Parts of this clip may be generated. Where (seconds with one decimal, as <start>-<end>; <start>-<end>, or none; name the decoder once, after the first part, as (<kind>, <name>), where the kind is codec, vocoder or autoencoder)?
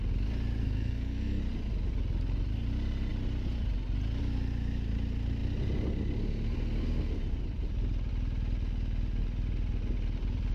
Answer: 0.6-1.4 (codec, SNAC)